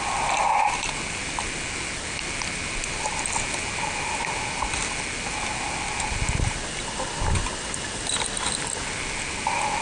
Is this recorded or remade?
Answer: recorded